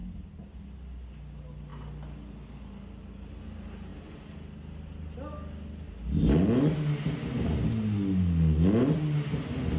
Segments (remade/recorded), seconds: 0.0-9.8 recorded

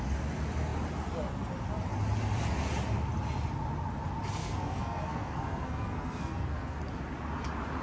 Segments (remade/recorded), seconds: 0.0-4.4 recorded; 4.4-6.8 remade; 6.8-7.8 recorded

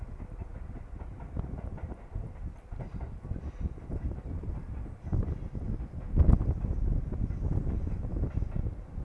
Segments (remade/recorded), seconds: 0.0-0.5 recorded; 0.5-5.7 remade; 5.7-9.0 recorded

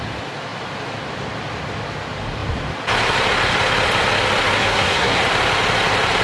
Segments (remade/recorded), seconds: 0.0-4.6 recorded; 4.6-5.2 remade; 5.2-6.2 recorded

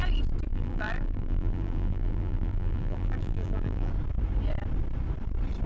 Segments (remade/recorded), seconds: 0.0-0.5 recorded; 0.5-3.9 remade; 3.9-5.7 recorded

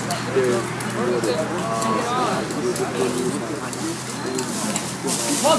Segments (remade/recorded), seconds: 0.0-5.6 recorded

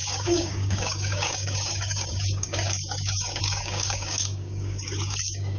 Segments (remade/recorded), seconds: 0.0-5.6 remade